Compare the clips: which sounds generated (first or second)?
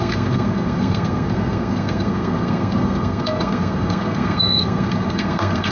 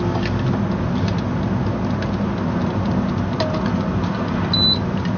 first